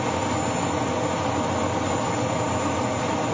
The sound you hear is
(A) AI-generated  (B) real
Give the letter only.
B